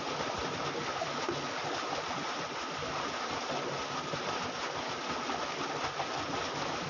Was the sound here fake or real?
real